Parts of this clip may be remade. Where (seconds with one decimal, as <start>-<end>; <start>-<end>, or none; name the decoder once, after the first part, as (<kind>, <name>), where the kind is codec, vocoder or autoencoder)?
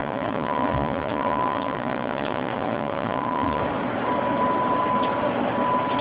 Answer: 0.0-3.6 (vocoder, Vocos)